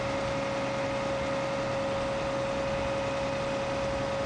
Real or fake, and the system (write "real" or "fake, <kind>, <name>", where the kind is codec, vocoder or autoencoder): real